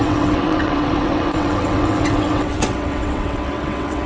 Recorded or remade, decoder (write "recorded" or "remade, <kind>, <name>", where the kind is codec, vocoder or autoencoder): remade, vocoder, WaveNeXt